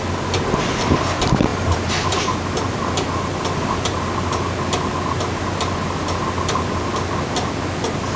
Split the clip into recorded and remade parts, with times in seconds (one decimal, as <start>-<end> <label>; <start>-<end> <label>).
0.0-8.2 recorded